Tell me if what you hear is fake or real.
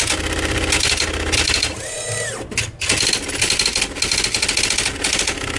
real